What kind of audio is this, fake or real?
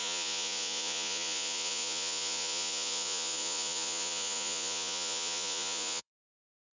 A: fake